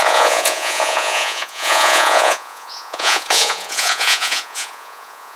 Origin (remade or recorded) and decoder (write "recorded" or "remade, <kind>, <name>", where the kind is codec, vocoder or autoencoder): remade, vocoder, Vocos